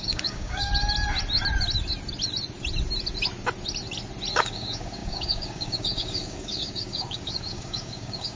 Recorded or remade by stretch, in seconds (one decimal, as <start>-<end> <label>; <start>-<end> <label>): 0.0-0.7 remade; 0.7-4.3 recorded; 4.3-8.4 remade